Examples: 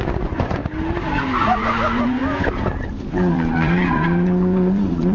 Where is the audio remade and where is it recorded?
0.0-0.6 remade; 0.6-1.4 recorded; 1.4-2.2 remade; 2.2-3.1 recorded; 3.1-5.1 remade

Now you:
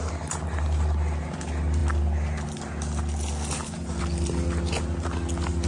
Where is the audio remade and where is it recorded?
0.0-5.7 recorded